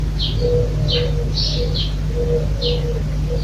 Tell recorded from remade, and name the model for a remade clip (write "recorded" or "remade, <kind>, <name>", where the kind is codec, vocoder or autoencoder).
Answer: recorded